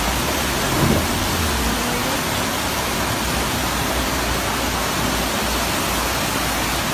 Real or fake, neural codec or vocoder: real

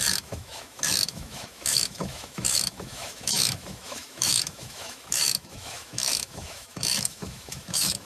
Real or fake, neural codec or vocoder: fake, autoencoder, DAC-VAE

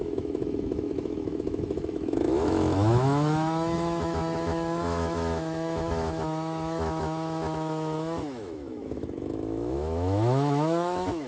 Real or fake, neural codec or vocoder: fake, autoencoder, DAC-VAE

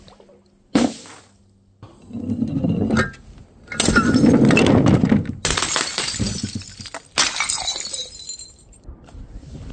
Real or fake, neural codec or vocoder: real